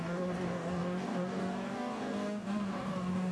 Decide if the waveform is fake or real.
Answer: fake